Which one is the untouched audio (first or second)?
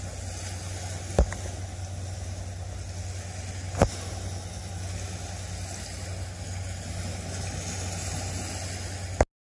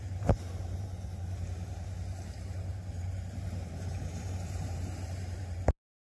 first